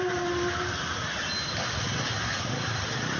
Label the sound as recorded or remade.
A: recorded